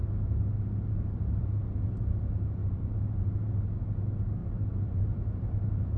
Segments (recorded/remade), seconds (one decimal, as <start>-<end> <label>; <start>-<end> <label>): 0.0-2.6 recorded; 2.6-3.5 remade; 3.5-4.4 recorded; 4.4-6.0 remade